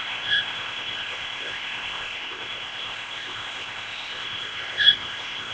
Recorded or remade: remade